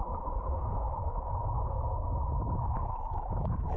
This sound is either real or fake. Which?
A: fake